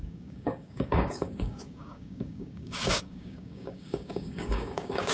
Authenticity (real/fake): fake